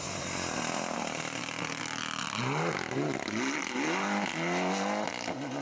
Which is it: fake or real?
real